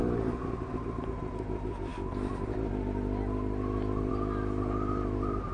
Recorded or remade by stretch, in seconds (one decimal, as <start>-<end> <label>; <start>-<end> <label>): 0.0-5.5 recorded